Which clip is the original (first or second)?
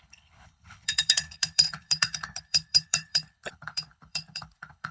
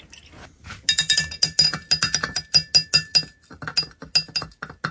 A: second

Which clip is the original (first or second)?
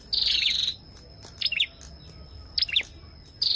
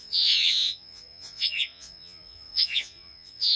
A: first